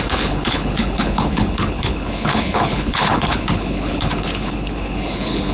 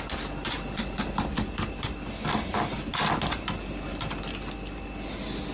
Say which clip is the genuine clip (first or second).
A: second